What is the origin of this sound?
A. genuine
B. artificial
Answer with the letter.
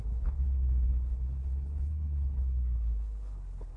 B